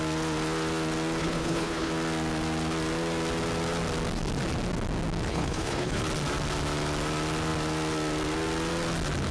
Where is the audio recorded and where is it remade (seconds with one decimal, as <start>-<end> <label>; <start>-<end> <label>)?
0.0-1.2 recorded; 1.2-1.9 remade; 1.9-5.3 recorded; 5.3-6.0 remade; 6.0-9.3 recorded